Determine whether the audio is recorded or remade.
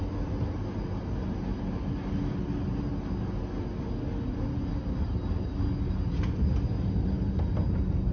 recorded